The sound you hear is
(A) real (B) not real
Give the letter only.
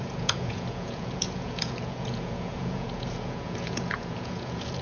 B